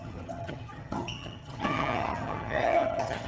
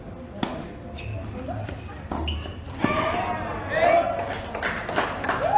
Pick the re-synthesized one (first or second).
first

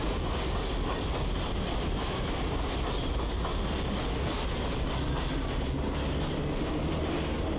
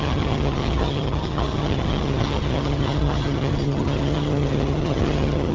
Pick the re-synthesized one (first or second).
second